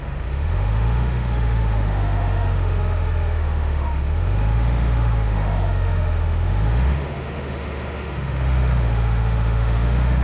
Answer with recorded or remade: remade